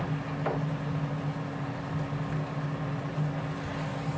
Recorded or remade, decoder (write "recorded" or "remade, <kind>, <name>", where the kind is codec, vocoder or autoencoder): recorded